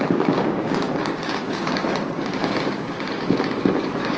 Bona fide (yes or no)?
no